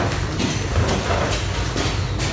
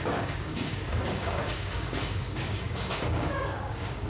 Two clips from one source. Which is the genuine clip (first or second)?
first